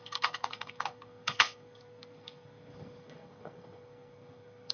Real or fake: fake